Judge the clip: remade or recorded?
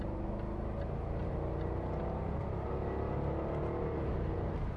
recorded